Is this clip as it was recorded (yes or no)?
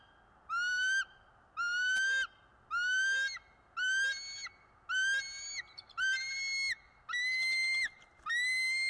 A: yes